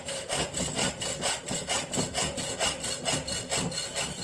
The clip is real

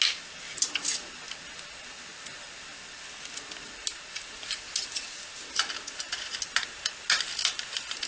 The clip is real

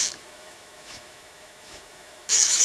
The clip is fake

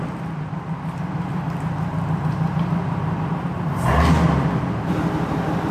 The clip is fake